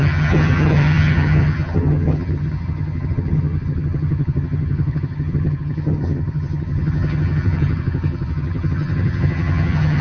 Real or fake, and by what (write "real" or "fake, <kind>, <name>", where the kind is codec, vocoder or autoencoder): fake, vocoder, HiFi-GAN